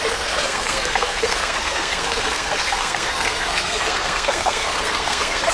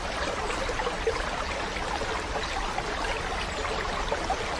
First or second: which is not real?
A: first